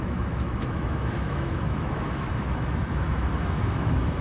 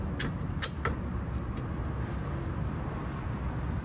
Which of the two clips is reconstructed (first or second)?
first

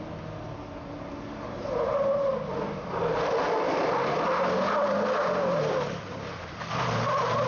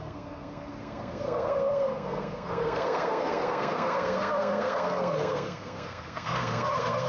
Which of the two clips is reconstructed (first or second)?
second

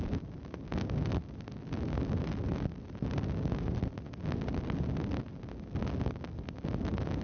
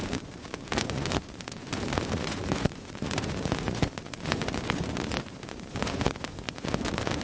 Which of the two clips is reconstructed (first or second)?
second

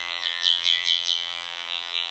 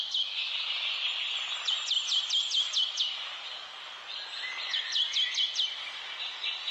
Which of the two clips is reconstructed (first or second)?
first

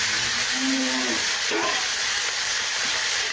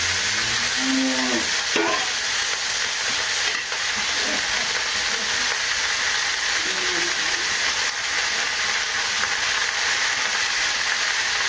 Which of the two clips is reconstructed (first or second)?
first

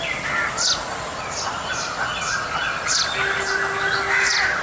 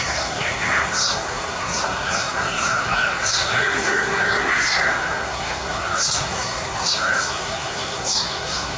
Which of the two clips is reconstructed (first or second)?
second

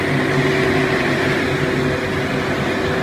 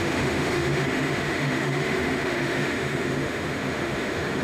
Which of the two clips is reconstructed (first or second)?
second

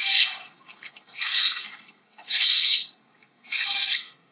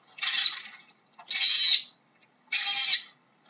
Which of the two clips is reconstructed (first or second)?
first